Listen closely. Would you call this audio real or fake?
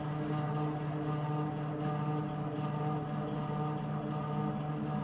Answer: real